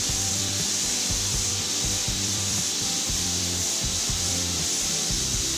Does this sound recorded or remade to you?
remade